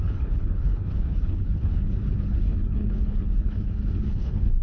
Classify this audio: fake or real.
fake